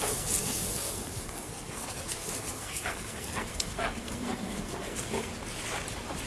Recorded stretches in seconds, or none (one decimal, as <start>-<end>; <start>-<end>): 5.3-6.3